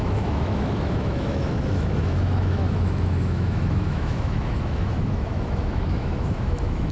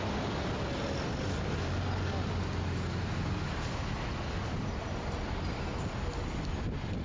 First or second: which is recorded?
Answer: second